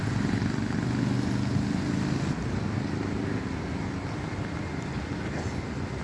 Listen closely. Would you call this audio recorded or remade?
recorded